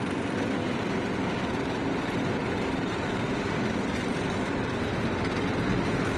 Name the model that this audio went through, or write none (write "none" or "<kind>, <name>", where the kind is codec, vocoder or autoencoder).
none